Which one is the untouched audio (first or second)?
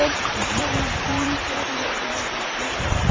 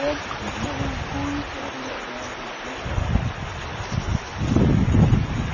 second